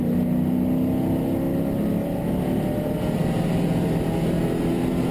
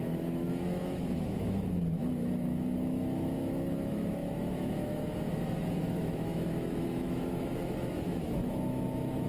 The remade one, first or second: second